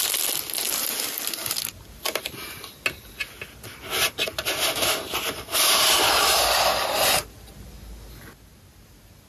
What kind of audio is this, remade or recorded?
recorded